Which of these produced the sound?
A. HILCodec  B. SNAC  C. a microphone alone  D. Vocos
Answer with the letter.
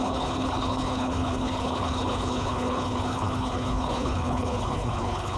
A